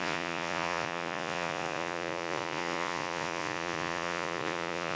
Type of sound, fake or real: fake